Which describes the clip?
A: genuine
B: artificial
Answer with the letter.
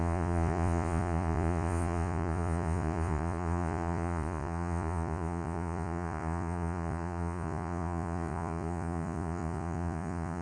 B